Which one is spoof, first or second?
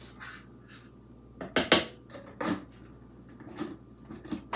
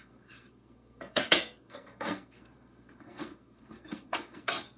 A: second